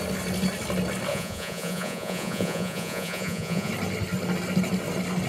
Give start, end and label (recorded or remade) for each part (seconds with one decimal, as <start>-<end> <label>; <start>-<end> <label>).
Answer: 0.0-1.1 recorded; 1.1-3.7 remade; 3.7-5.3 recorded